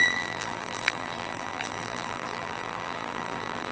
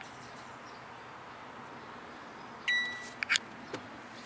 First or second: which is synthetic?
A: first